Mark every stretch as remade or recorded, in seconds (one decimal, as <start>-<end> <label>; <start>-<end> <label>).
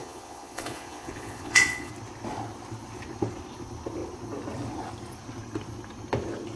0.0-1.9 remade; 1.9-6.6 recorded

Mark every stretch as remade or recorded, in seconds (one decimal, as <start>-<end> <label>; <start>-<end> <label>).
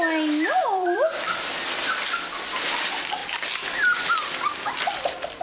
0.0-0.6 recorded; 0.6-1.6 remade; 1.6-5.4 recorded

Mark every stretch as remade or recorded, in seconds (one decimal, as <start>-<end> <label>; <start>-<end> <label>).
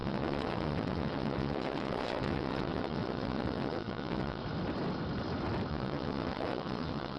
0.0-4.4 remade; 4.4-5.7 recorded; 5.7-7.2 remade